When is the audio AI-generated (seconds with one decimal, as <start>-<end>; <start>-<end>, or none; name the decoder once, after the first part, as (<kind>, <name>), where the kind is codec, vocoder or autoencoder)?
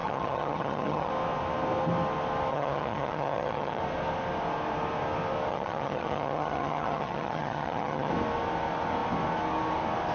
0.0-1.1 (vocoder, HiFi-GAN); 2.5-3.8; 5.5-8.1